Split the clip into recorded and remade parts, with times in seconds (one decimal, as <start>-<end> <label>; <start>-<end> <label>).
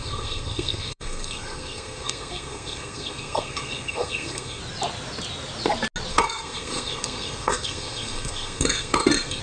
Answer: 0.0-4.6 remade; 4.6-6.1 recorded; 6.1-9.4 remade